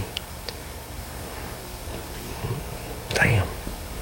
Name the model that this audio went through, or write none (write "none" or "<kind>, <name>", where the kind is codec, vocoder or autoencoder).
codec, DAC